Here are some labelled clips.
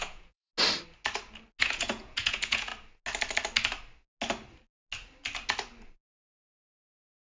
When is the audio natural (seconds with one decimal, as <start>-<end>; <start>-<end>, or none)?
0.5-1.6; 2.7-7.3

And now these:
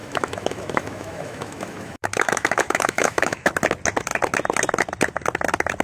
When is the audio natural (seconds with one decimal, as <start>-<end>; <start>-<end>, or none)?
3.5-5.8

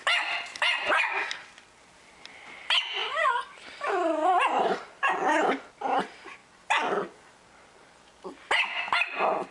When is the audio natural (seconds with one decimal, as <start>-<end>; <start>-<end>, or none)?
0.0-9.5

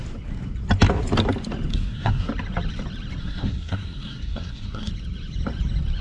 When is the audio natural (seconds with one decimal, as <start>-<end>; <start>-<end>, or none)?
0.0-1.7; 2.3-3.2; 4.9-6.0

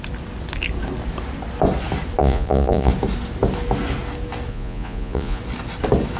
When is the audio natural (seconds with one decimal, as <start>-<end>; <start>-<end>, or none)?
0.0-2.2; 2.9-4.5; 5.4-6.2